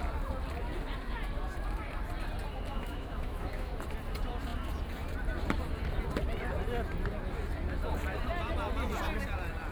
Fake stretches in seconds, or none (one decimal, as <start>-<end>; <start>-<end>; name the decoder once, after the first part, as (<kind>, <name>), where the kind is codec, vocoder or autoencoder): 2.7-3.7 (autoencoder, DAC-VAE)